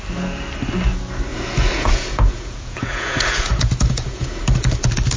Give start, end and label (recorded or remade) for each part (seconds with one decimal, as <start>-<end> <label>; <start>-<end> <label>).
0.0-1.3 recorded; 1.3-4.4 remade; 4.4-5.2 recorded